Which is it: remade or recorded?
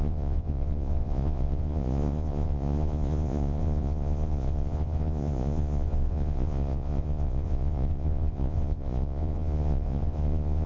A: remade